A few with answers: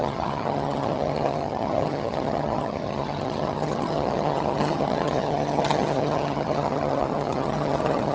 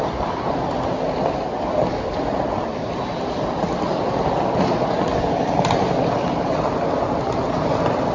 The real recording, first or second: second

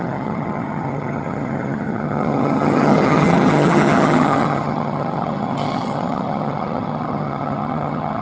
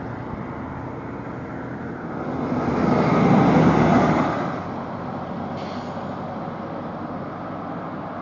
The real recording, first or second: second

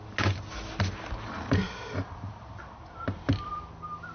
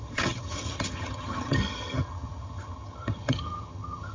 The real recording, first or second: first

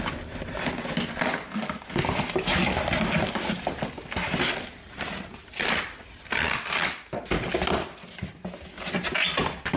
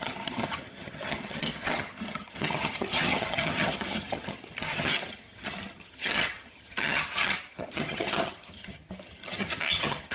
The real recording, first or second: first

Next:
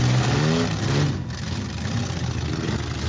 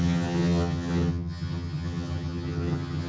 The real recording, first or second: first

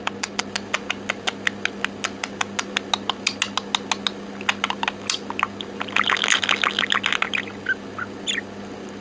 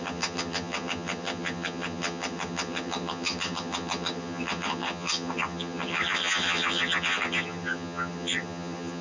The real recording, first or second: first